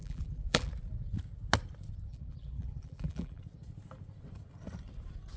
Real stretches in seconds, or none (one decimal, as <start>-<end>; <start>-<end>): 0.7-2.1; 3.4-5.4